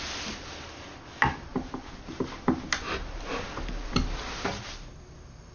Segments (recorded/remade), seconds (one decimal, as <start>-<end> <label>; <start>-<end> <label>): 0.0-5.5 recorded